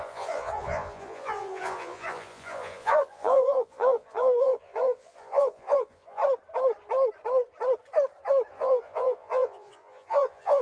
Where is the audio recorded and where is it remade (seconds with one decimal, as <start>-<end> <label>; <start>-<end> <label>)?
0.0-6.2 remade; 6.2-8.5 recorded; 8.5-10.6 remade